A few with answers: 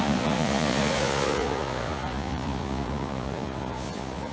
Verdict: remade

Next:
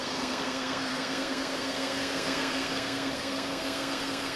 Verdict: remade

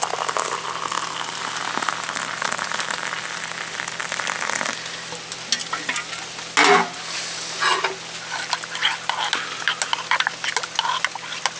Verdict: recorded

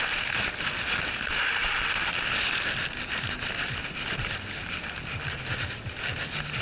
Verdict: recorded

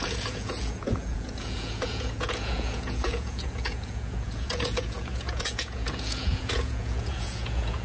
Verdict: remade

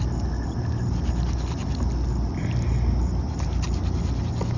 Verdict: recorded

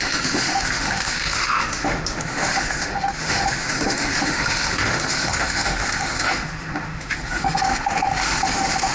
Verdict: remade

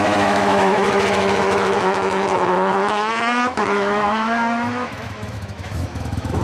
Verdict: remade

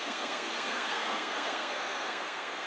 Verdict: remade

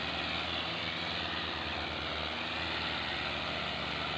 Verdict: recorded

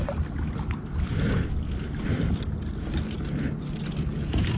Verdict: recorded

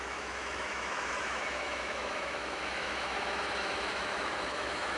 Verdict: remade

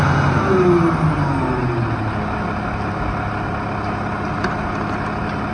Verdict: recorded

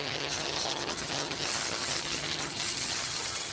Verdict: remade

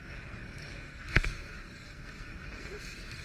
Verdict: remade